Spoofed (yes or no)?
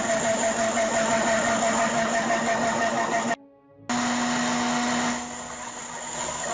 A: no